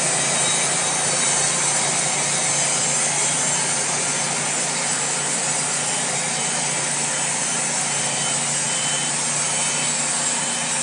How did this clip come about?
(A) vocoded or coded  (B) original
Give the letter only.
B